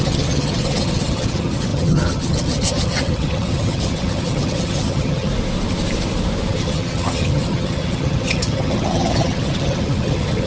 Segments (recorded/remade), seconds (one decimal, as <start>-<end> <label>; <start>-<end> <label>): 0.0-5.3 remade; 5.3-6.5 recorded; 6.5-10.5 remade